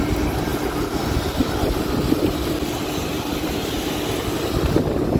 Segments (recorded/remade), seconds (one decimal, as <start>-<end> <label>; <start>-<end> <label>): 0.0-5.2 recorded